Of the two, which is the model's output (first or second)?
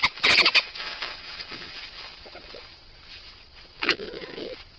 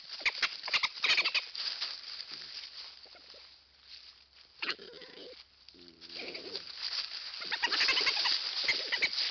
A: first